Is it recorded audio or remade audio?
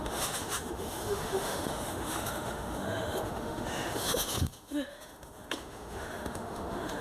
remade